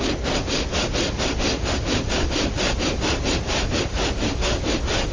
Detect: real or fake real